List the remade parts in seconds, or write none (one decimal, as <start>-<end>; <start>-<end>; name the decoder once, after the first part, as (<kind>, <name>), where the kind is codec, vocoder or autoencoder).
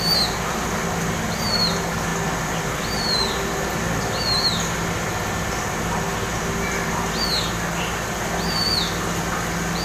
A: none